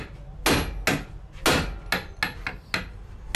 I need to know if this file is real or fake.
real